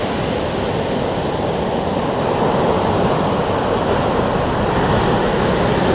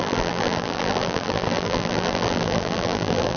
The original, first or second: first